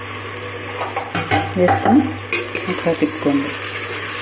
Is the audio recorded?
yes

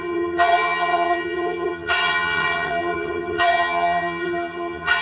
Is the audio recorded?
no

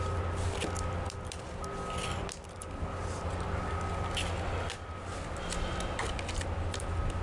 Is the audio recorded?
yes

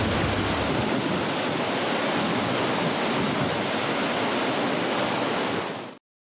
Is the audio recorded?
yes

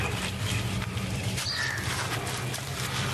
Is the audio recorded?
no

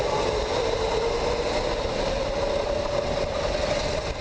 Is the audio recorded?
yes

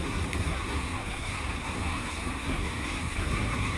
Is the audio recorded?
no